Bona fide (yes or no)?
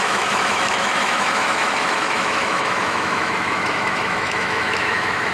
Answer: no